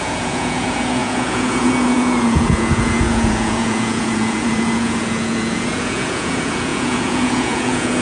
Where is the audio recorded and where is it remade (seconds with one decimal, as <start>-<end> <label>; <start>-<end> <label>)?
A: 0.0-8.0 remade